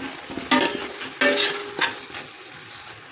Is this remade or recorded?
recorded